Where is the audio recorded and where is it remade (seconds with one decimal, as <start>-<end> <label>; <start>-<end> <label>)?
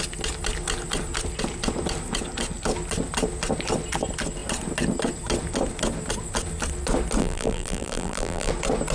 0.0-7.2 recorded; 7.2-8.5 remade; 8.5-8.9 recorded